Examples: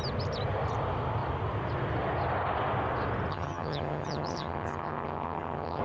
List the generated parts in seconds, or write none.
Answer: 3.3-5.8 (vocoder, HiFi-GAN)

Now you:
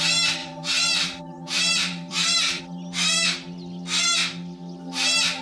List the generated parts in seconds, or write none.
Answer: 0.4-2.6 (vocoder, BigVGAN v2)

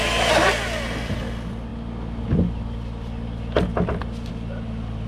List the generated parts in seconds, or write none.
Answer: none

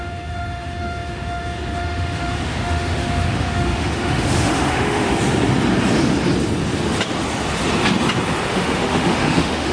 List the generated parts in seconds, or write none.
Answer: 0.0-5.1 (autoencoder, DAC-VAE); 8.5-9.7

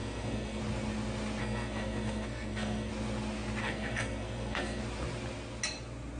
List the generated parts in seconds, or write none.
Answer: 0.0-0.6 (codec, SNAC); 1.4-2.9; 3.6-4.8

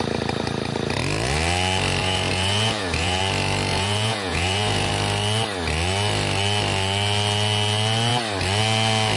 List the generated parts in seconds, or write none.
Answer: 2.0-3.2 (vocoder, Vocos); 3.7-4.9

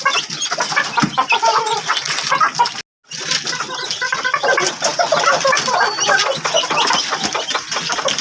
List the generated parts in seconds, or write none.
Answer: none

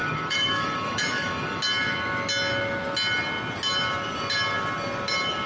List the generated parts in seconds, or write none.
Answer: 0.0-1.6 (autoencoder, DAC-VAE)